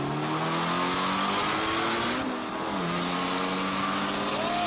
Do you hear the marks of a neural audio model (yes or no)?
no